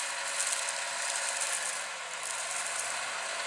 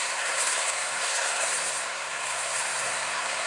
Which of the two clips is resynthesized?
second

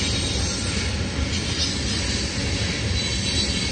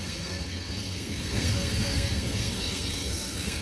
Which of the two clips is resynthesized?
second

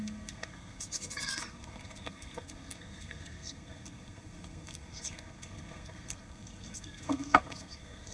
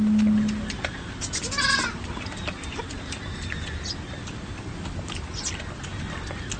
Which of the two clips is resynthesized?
first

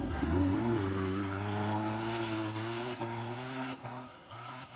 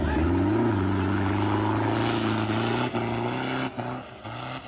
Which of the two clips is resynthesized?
first